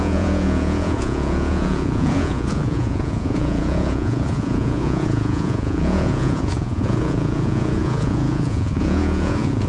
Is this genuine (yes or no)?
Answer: no